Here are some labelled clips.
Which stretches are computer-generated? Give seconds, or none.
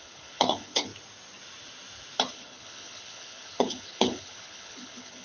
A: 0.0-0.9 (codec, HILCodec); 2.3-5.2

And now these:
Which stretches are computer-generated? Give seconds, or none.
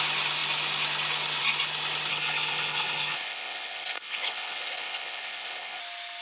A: 2.1-5.8 (codec, HILCodec)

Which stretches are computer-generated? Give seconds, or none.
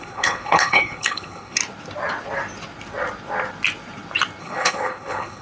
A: 0.0-1.6 (codec, HILCodec); 4.4-5.4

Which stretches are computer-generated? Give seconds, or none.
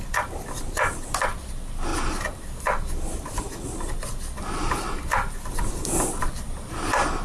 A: none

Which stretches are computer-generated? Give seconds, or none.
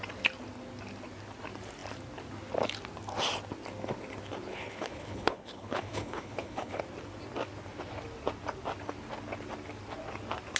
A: 4.5-6.8 (codec, HILCodec)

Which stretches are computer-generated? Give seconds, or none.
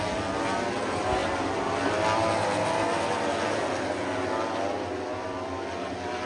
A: none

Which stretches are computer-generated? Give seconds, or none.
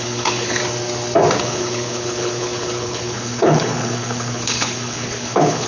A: 0.0-0.6 (codec, HILCodec); 1.4-5.7